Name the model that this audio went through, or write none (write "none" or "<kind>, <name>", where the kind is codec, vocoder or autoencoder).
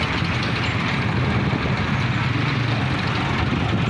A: none